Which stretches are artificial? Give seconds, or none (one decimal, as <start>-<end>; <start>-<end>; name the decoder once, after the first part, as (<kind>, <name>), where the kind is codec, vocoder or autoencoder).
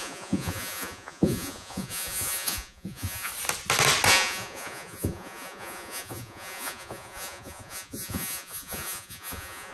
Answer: 0.0-3.3 (vocoder, Vocos); 4.1-9.7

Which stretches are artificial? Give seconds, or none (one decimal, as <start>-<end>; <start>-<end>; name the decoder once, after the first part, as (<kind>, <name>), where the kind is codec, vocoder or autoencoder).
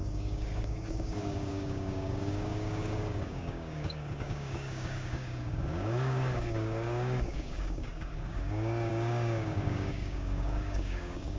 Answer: 0.0-11.4 (codec, DAC)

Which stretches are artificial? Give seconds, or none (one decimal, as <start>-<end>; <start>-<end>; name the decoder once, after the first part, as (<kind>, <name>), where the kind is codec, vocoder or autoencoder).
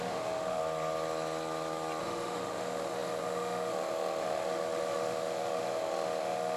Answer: 0.0-0.6 (autoencoder, DAC-VAE); 2.0-6.6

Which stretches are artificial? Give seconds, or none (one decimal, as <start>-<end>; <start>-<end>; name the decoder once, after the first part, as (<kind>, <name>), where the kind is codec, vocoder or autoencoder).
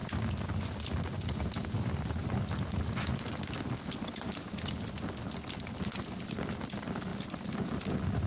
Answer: none